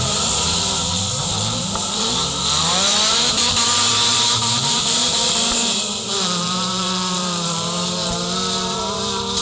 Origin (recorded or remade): remade